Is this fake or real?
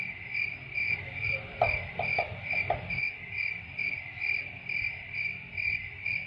real